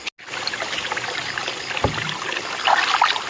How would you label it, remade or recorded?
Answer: recorded